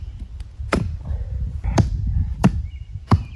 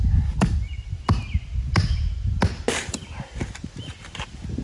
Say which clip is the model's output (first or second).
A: first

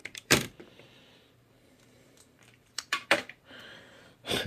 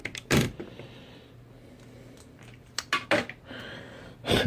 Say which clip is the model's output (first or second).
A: first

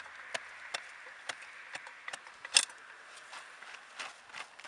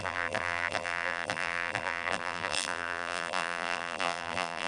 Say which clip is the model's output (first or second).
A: second